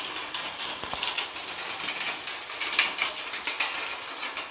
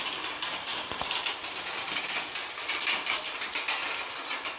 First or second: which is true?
first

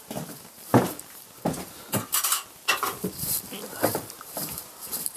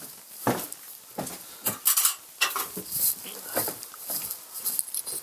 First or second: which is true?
second